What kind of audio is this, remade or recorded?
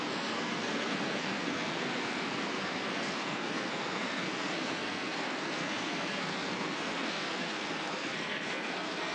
remade